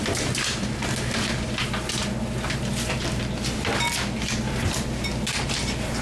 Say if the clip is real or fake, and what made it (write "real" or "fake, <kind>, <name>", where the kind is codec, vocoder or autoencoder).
real